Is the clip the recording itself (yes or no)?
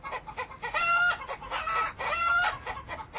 yes